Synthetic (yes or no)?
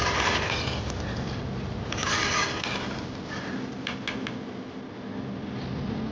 no